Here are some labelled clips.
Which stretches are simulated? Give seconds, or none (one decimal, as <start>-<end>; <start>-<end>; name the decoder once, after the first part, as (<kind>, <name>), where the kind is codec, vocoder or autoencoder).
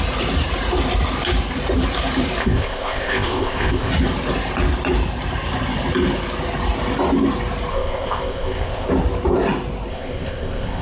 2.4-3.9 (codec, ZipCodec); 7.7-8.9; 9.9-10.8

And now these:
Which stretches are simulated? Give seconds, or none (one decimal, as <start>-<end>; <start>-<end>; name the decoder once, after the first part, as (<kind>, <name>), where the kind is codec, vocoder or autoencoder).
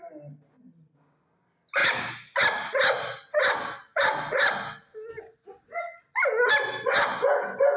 none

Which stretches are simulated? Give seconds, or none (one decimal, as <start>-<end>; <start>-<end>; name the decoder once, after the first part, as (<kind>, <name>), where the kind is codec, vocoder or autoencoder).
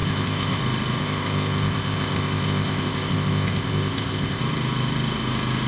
0.0-0.6 (codec, ZipCodec); 1.0-4.4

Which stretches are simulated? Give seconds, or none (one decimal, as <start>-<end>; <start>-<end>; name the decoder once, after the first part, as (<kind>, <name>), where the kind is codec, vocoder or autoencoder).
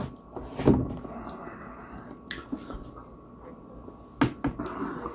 none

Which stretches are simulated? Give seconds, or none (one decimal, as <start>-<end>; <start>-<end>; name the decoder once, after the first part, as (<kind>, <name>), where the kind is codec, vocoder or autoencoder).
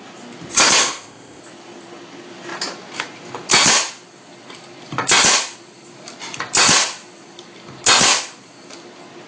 0.8-1.4 (codec, ZipCodec)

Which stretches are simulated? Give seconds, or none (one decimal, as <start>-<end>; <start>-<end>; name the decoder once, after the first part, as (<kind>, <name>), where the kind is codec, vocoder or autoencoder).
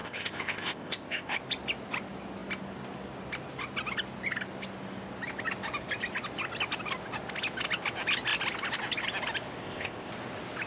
0.0-1.4 (codec, ZipCodec); 9.6-10.1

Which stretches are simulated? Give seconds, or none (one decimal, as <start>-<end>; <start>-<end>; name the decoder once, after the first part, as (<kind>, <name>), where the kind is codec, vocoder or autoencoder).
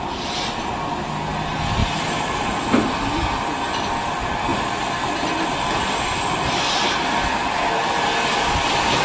none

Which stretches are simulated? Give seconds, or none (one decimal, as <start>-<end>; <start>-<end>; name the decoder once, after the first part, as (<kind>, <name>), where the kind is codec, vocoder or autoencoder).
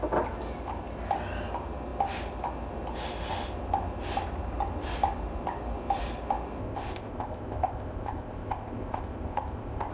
6.6-9.9 (codec, ZipCodec)